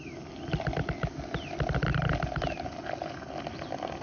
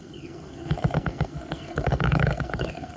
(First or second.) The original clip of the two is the first